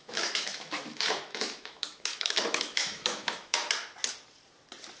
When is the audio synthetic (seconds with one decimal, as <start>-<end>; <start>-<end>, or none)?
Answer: 0.0-3.6